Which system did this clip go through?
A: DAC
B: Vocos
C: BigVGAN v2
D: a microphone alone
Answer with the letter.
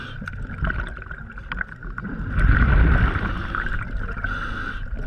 D